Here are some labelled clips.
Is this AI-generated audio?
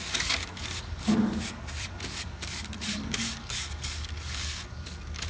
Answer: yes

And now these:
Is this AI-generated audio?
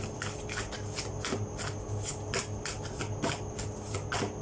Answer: no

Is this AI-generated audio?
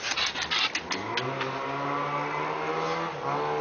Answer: no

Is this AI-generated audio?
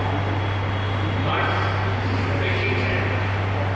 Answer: no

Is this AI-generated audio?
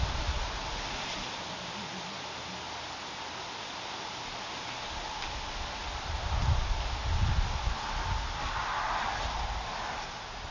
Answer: no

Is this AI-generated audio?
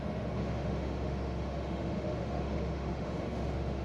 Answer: yes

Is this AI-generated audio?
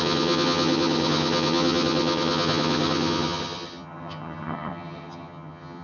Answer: yes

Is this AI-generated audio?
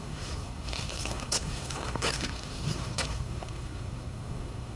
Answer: yes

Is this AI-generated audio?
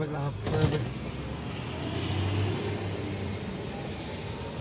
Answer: no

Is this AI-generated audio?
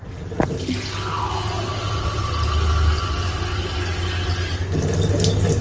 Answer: no